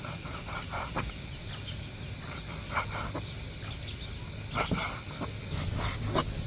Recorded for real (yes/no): yes